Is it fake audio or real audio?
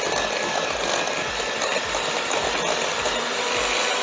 real